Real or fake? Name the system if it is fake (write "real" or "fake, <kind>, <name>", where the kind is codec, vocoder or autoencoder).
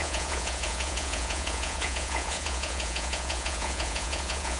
fake, vocoder, Vocos